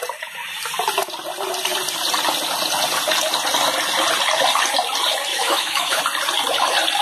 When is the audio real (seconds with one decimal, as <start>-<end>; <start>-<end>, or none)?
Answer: 0.0-5.3; 6.0-7.0